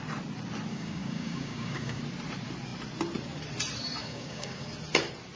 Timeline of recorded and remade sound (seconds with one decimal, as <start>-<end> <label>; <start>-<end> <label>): 0.0-0.7 recorded; 0.7-2.0 remade; 2.0-4.0 recorded; 4.0-4.7 remade; 4.7-5.4 recorded